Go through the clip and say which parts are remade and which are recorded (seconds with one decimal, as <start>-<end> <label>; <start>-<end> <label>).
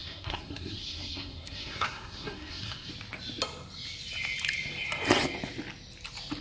0.0-2.9 remade; 2.9-6.4 recorded